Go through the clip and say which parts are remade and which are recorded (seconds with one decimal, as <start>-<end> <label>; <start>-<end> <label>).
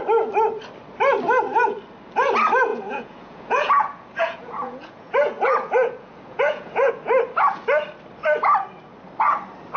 0.0-2.7 recorded; 2.7-6.9 remade; 6.9-9.8 recorded